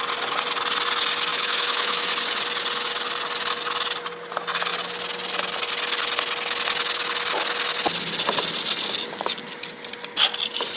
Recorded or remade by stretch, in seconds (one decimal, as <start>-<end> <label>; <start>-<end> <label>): 0.0-1.3 recorded; 1.3-2.1 remade; 2.1-10.8 recorded